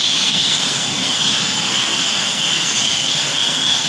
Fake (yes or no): yes